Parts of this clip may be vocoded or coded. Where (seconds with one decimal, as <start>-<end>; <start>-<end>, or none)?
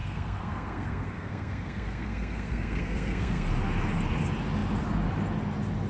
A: 0.0-3.5